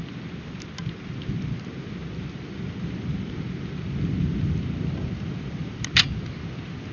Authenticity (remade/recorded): recorded